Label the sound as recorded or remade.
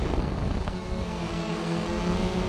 remade